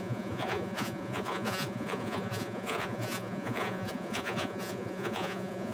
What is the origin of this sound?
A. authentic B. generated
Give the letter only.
B